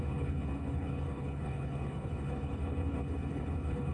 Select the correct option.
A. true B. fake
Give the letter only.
B